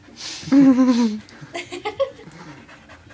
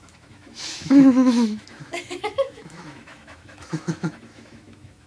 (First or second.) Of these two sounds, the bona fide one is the first